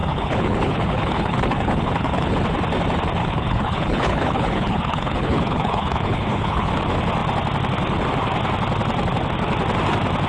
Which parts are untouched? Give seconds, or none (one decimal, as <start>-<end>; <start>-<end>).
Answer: 2.3-3.2; 6.7-10.3